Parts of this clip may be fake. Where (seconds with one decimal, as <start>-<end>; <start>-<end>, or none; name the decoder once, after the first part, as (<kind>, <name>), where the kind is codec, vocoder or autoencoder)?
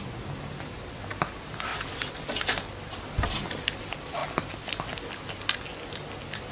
0.0-4.2 (vocoder, BigVGAN v2)